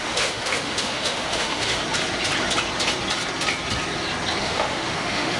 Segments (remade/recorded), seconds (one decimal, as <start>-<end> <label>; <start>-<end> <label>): 0.0-1.8 remade; 1.8-4.4 recorded; 4.4-5.4 remade